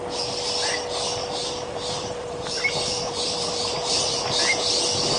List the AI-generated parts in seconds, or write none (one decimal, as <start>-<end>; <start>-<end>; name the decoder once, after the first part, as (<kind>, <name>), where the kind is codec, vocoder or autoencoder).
1.2-4.2 (vocoder, BigVGAN v2)